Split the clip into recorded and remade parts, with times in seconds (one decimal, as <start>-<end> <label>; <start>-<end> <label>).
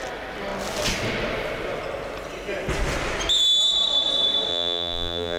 0.0-4.5 recorded; 4.5-5.4 remade